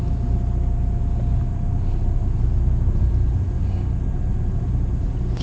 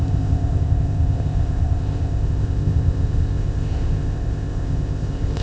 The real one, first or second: first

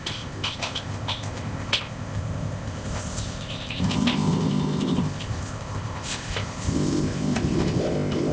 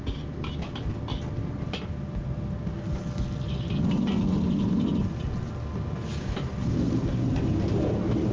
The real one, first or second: second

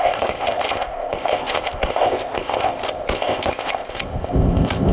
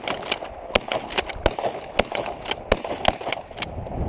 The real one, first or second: second